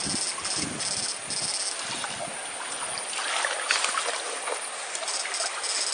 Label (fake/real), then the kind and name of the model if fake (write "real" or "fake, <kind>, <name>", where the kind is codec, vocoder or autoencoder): real